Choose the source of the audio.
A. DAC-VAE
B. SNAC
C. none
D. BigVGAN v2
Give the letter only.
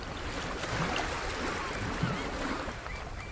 C